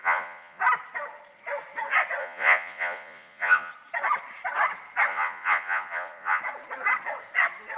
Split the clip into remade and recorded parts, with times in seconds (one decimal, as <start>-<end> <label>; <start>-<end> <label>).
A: 0.0-0.6 remade; 0.6-2.2 recorded; 2.2-3.7 remade; 3.7-5.1 recorded; 5.1-6.4 remade; 6.4-7.8 recorded